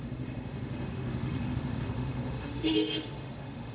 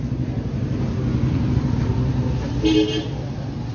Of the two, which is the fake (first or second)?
first